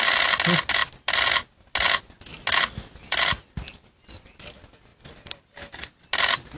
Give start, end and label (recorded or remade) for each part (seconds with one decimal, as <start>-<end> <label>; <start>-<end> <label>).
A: 0.0-6.6 recorded